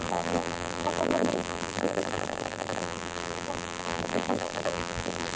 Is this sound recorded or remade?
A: remade